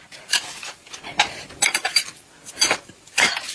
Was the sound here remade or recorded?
recorded